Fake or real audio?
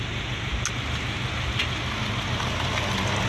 real